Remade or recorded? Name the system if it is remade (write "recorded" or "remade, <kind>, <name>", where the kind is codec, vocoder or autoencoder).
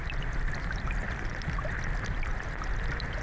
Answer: remade, vocoder, BigVGAN v2